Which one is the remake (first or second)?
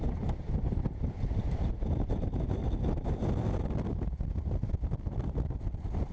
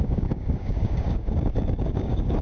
second